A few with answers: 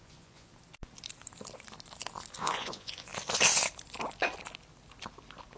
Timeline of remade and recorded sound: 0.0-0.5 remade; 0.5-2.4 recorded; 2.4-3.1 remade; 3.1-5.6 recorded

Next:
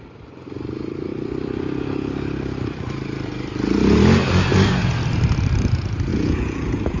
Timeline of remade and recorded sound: 0.0-6.1 recorded; 6.1-7.0 remade

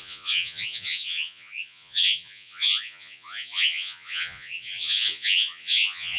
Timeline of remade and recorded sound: 0.0-6.2 remade

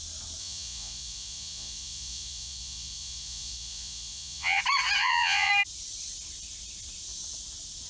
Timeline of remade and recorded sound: 0.0-0.4 recorded; 0.4-4.6 remade; 4.6-5.0 recorded; 5.0-5.5 remade; 5.5-7.9 recorded

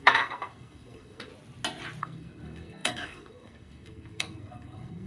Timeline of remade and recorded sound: 0.0-1.3 remade; 1.3-2.0 recorded; 2.0-5.1 remade

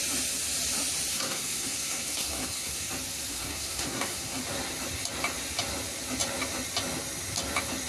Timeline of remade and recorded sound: 0.0-1.1 recorded; 1.1-2.9 remade; 2.9-3.3 recorded; 3.3-4.4 remade; 4.4-7.9 recorded